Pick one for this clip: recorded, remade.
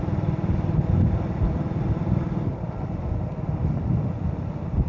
recorded